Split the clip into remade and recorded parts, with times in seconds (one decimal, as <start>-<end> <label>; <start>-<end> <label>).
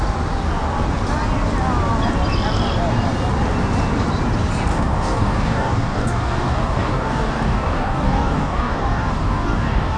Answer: 0.0-4.7 recorded; 4.7-10.0 remade